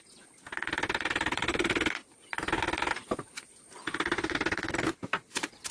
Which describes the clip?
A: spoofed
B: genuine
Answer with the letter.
B